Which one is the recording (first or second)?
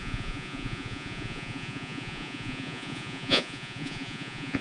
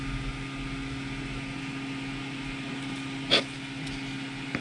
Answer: second